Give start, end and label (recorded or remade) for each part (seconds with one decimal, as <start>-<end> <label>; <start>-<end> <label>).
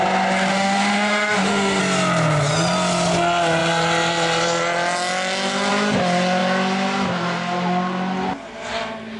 0.0-0.5 recorded; 0.5-1.8 remade; 1.8-9.2 recorded